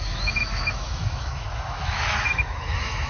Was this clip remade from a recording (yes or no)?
yes